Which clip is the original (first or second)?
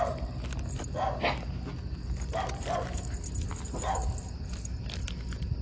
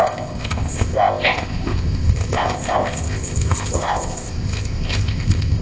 first